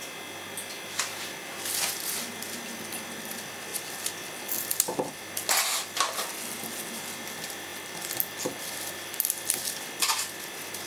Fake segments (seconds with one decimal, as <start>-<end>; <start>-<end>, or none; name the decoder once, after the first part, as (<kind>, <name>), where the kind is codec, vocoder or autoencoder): none